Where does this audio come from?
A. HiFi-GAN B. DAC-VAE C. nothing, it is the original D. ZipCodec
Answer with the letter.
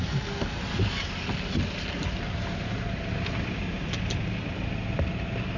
C